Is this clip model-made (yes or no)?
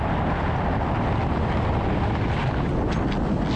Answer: no